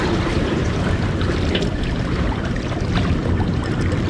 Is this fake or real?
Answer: fake